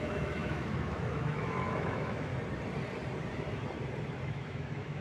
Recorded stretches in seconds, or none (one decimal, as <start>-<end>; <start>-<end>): 2.3-4.2